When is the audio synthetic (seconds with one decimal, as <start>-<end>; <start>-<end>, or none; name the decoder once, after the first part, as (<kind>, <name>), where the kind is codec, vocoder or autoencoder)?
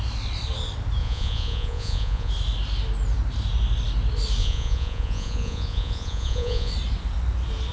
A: 1.0-2.3 (vocoder, Vocos); 4.4-6.7